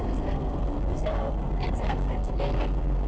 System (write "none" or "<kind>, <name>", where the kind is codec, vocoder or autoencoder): codec, SNAC